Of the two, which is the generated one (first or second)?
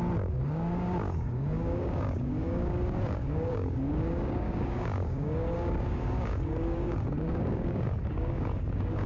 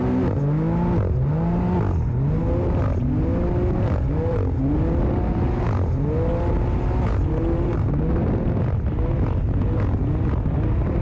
first